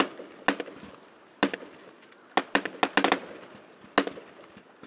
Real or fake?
real